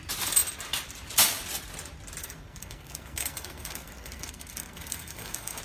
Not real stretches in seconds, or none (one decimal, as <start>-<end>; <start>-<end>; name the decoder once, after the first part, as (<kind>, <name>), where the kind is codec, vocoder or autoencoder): 2.2-5.6 (codec, SNAC)